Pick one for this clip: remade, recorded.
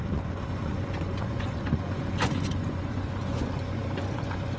remade